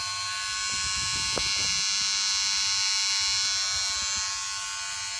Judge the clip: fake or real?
real